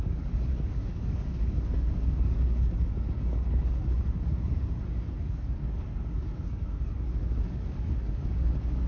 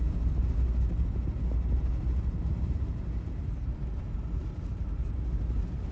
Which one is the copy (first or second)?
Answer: first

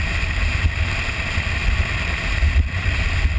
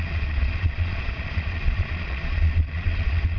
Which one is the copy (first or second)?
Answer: second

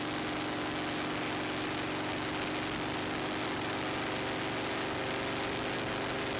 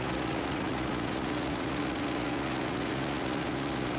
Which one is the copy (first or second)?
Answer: second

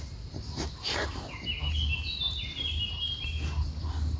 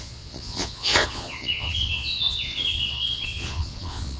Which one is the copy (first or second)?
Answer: second